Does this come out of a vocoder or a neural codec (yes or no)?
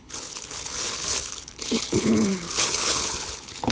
yes